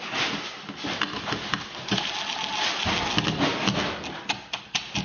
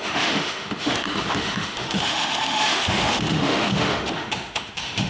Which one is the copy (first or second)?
second